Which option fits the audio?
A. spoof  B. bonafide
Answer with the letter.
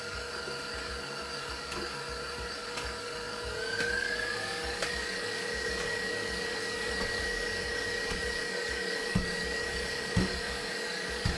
A